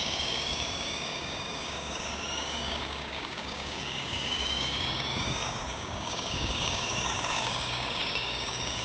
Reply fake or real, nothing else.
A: fake